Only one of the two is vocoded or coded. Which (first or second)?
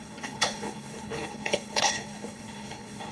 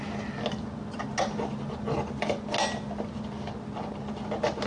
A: first